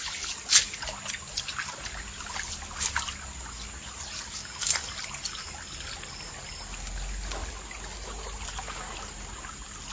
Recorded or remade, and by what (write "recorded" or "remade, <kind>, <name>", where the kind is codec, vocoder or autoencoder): recorded